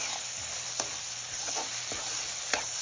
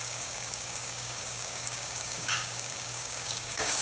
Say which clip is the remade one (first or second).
second